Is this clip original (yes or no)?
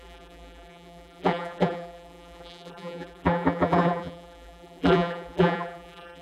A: no